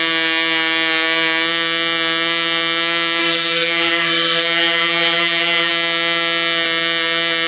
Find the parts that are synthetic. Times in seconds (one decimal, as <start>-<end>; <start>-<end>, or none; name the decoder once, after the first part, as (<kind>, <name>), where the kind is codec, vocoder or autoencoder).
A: 3.2-5.7 (codec, SNAC)